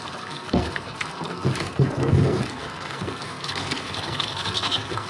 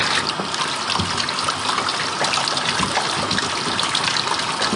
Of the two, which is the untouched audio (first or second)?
second